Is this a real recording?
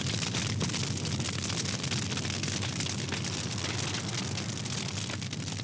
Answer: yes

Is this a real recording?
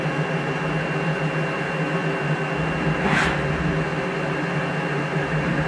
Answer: yes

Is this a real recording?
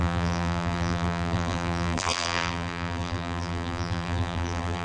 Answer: no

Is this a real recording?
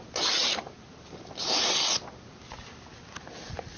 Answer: yes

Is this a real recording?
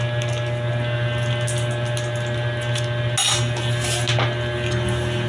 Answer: yes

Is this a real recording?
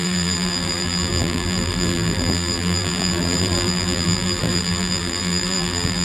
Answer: no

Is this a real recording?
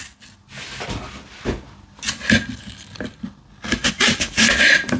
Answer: yes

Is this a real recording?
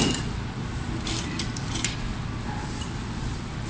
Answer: no